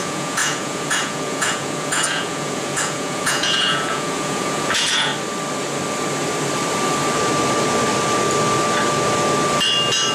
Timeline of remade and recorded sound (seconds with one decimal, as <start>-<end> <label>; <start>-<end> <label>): 0.0-5.1 remade; 5.1-10.1 recorded